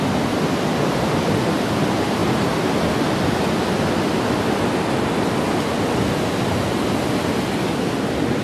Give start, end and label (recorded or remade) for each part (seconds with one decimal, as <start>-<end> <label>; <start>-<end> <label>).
0.0-8.4 recorded

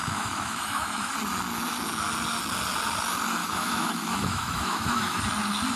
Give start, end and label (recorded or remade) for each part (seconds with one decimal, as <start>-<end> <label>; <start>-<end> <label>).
0.0-1.1 remade; 1.1-3.4 recorded; 3.4-5.2 remade; 5.2-5.8 recorded

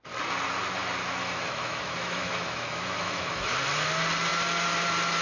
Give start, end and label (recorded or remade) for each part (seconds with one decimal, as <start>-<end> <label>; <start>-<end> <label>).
0.0-1.2 recorded; 1.2-3.5 remade; 3.5-5.2 recorded

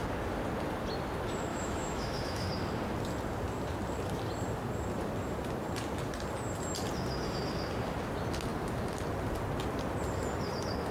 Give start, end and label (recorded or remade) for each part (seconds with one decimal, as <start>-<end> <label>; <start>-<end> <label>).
0.0-1.5 recorded; 1.5-2.5 remade; 2.5-10.9 recorded

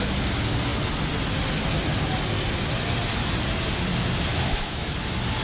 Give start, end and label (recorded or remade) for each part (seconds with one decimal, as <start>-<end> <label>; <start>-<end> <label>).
0.0-4.3 recorded; 4.3-4.9 remade; 4.9-5.4 recorded